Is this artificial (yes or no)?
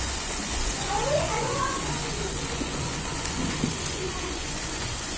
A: yes